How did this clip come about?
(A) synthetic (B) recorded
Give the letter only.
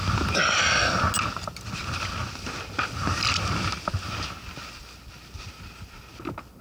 B